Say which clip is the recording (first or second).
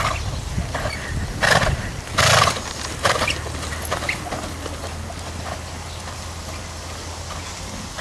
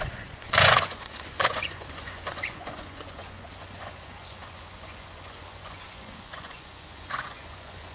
first